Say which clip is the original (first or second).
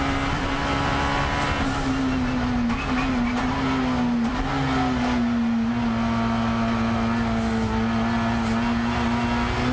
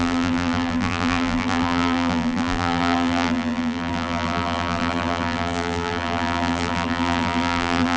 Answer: first